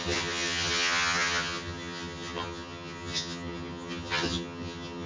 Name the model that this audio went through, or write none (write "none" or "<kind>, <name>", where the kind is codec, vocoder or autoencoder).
vocoder, HiFi-GAN